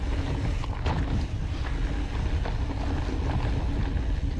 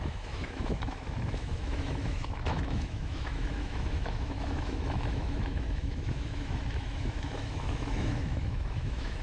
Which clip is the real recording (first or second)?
first